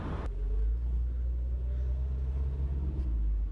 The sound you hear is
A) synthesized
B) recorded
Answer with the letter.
B